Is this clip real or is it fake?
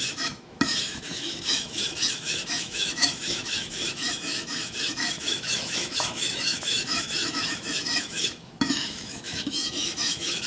fake